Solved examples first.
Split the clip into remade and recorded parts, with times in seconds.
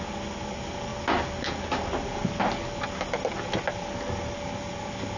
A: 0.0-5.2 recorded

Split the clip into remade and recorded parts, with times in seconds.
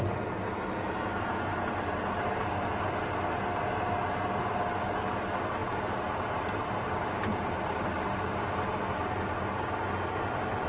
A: 0.0-10.7 recorded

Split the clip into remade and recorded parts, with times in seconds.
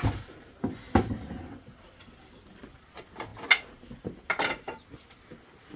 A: 0.0-1.4 recorded; 1.4-2.1 remade; 2.1-5.8 recorded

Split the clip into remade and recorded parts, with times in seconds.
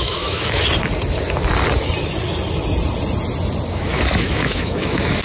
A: 0.0-0.6 remade; 0.6-3.7 recorded; 3.7-5.2 remade